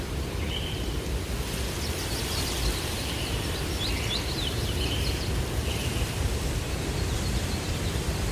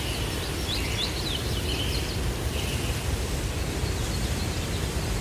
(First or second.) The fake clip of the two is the first